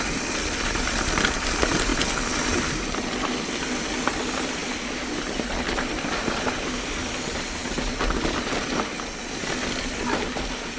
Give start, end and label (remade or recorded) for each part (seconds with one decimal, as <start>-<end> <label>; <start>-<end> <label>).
0.0-10.8 recorded